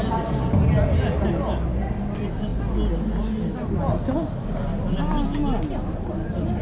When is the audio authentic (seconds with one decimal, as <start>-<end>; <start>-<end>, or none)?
0.0-6.6